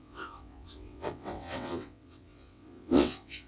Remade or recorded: remade